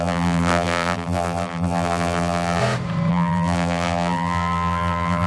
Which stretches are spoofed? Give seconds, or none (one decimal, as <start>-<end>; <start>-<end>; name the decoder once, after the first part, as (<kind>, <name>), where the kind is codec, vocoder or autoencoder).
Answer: 0.0-2.6 (vocoder, BigVGAN v2); 3.1-5.3